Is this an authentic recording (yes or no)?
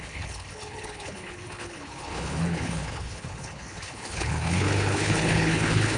no